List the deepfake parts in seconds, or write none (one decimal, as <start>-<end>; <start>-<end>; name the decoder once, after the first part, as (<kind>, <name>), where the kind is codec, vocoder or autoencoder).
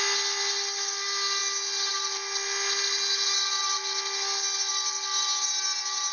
none